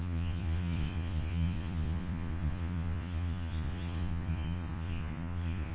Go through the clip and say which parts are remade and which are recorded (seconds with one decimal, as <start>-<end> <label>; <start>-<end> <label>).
0.0-5.7 remade